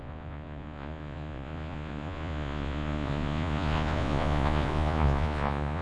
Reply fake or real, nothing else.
fake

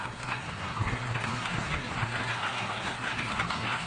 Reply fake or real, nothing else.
fake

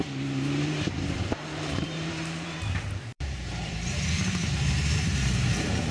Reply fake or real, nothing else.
fake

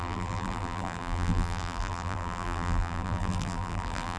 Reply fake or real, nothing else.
fake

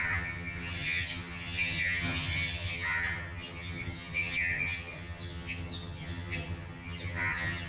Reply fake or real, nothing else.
fake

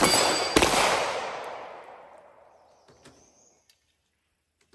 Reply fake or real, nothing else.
real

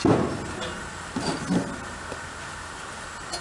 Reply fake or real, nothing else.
real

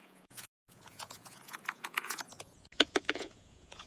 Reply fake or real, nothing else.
fake